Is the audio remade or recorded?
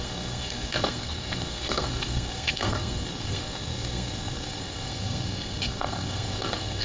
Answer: remade